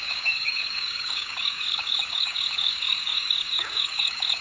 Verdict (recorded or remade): remade